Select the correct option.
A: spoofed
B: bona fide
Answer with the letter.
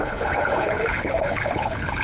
A